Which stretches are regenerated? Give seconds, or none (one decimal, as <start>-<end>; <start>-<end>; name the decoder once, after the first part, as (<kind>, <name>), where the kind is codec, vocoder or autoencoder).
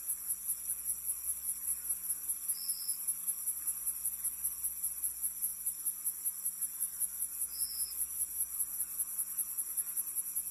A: 0.0-1.7 (vocoder, Vocos); 4.0-5.5; 6.6-10.5